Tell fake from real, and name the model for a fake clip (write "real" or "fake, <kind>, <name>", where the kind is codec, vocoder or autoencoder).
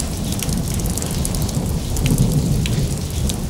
real